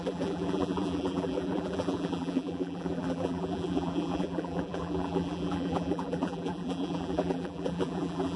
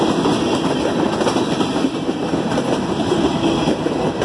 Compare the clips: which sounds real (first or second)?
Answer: second